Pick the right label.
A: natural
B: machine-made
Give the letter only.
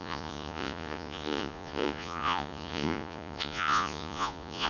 B